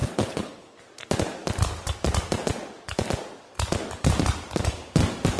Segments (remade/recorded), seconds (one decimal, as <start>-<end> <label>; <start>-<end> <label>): 0.0-0.8 remade; 0.8-5.4 recorded